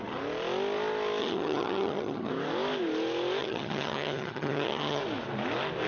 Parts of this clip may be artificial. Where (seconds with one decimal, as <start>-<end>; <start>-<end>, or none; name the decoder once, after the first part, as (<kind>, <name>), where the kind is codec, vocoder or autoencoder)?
1.2-2.3 (vocoder, HiFi-GAN); 3.4-5.0